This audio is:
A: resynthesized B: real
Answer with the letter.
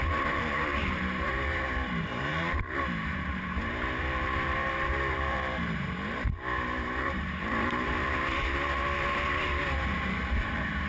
A